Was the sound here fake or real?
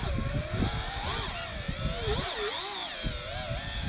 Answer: real